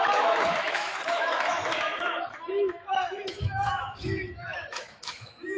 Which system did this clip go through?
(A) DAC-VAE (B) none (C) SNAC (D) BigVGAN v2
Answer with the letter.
A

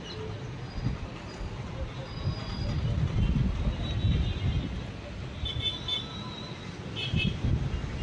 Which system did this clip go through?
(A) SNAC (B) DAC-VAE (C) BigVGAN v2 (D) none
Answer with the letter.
D